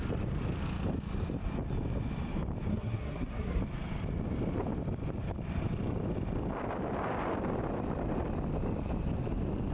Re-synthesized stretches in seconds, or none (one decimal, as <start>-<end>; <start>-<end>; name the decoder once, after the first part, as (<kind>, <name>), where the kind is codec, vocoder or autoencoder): 2.7-3.6 (codec, SNAC)